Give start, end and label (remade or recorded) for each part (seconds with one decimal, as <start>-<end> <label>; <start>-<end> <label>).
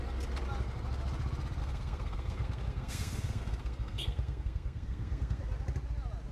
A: 0.0-1.6 recorded; 1.6-5.4 remade; 5.4-6.3 recorded